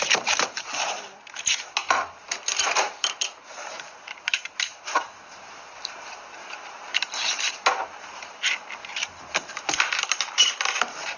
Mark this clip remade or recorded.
remade